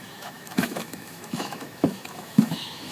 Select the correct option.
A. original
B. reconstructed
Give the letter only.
B